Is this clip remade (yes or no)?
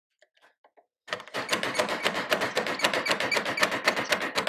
no